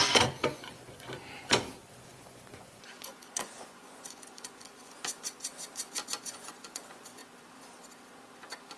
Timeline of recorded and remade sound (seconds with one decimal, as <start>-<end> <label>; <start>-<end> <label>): 0.0-7.2 remade; 7.2-8.8 recorded